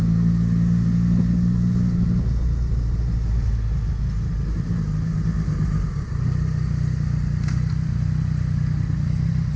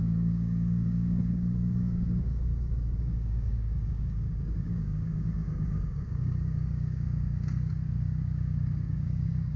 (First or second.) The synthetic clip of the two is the second